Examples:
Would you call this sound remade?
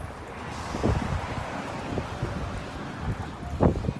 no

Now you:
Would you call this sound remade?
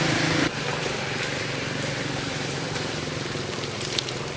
no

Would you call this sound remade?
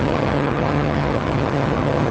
yes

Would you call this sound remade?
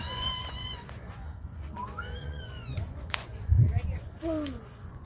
yes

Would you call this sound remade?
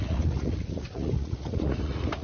yes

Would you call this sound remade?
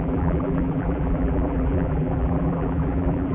yes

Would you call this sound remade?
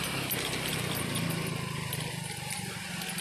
no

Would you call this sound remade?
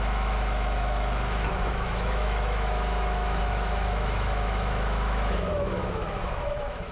yes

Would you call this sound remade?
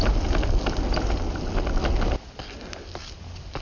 no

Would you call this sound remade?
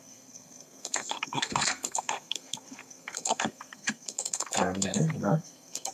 yes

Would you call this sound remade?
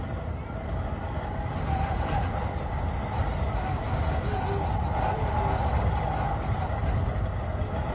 no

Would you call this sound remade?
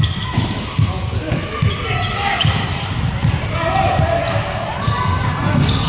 no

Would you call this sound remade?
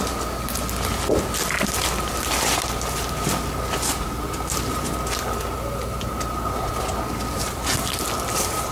no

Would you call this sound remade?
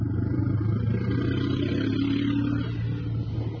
no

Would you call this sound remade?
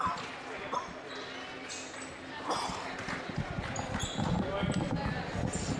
no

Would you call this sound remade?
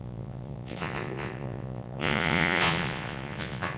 yes